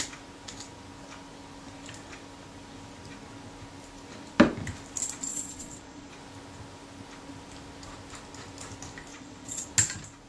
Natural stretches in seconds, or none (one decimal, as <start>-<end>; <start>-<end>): 0.0-5.3; 6.1-9.1; 9.7-10.3